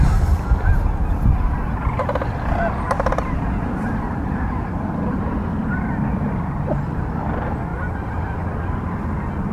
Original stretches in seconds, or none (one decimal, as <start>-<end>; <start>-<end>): 0.0-7.7; 8.5-9.5